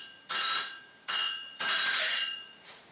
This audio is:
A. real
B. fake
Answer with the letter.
B